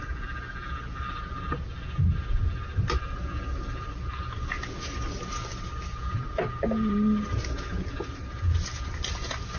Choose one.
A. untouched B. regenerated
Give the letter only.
A